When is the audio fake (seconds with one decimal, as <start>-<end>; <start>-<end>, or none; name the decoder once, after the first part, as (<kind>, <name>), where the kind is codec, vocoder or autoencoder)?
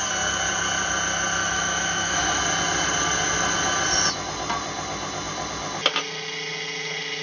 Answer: 1.4-2.4 (autoencoder, DAC-VAE)